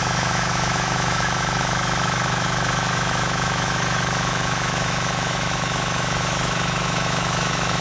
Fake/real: fake